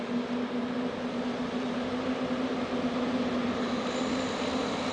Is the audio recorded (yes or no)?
yes